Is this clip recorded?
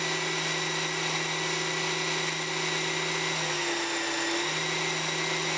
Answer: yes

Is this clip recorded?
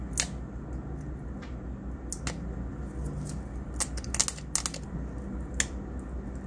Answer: yes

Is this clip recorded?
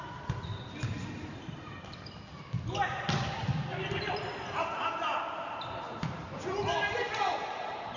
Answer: yes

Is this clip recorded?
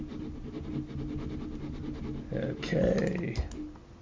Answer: yes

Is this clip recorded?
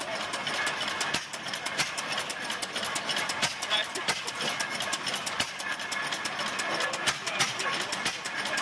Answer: yes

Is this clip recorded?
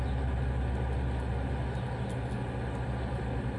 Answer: yes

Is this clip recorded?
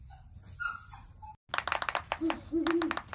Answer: yes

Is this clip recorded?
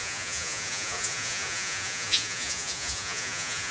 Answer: no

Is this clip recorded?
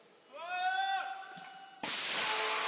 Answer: yes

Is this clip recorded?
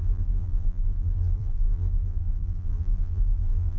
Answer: no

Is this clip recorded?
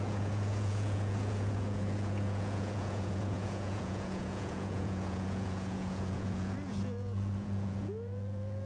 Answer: no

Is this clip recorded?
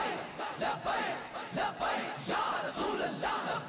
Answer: yes